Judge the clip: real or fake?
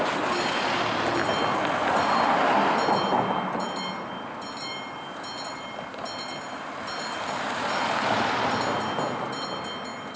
real